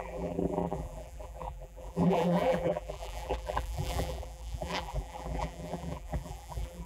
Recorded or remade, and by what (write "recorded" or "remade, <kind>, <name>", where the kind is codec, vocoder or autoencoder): remade, vocoder, BigVGAN v2